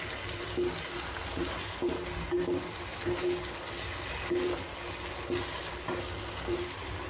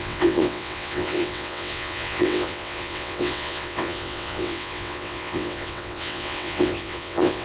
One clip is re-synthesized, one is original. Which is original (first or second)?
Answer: first